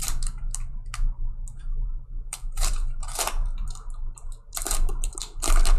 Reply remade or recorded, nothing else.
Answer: remade